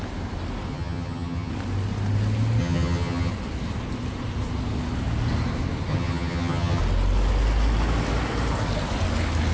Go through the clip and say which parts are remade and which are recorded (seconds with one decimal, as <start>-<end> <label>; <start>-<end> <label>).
0.0-0.7 recorded; 0.7-1.5 remade; 1.5-2.6 recorded; 2.6-3.3 remade; 3.3-5.9 recorded; 5.9-6.8 remade; 6.8-9.5 recorded